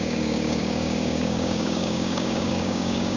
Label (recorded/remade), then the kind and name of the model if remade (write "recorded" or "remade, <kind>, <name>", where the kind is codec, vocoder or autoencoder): remade, codec, DAC